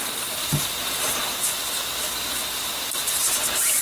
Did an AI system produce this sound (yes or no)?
no